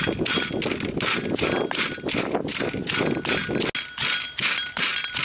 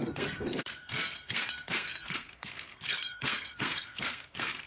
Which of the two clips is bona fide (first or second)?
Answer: first